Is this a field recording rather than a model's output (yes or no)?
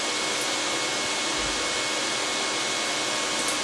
yes